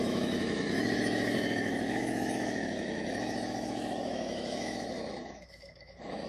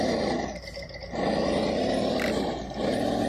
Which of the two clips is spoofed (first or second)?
first